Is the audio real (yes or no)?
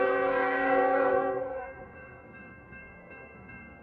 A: no